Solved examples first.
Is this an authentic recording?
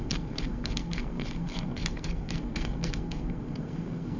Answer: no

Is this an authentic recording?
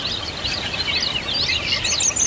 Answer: yes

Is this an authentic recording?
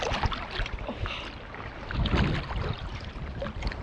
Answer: yes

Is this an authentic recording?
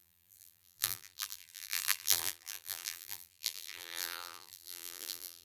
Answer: no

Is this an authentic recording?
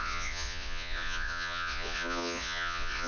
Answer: no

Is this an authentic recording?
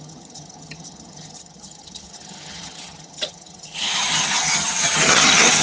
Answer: no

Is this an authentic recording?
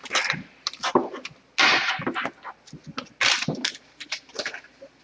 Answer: yes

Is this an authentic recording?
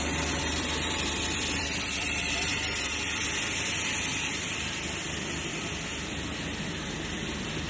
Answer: no